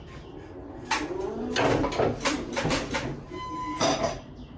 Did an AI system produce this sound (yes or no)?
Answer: no